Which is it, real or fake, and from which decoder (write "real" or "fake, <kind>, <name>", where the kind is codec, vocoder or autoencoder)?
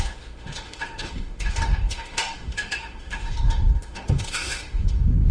fake, autoencoder, DAC-VAE